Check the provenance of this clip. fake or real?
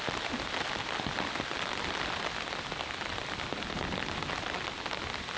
fake